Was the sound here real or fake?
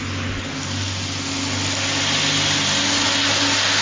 real